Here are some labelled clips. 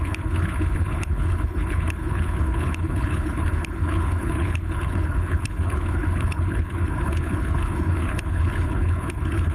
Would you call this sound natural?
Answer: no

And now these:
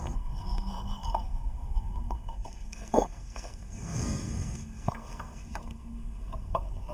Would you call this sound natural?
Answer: no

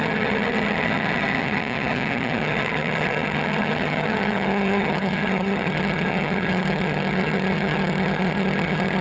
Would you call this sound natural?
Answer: no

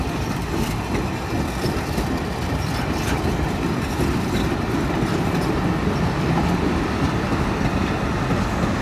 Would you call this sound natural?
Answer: yes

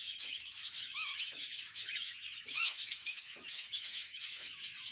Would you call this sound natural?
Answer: no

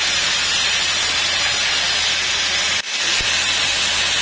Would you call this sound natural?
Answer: yes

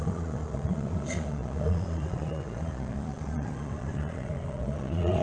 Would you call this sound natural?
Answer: no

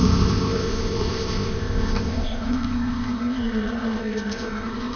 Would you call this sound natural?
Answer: no